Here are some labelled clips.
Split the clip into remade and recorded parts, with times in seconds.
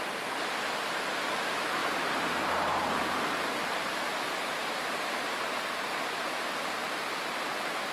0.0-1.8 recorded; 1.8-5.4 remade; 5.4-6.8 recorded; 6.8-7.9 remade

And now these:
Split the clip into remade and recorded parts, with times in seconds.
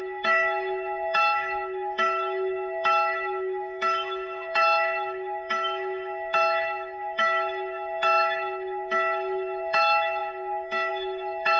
0.0-11.6 remade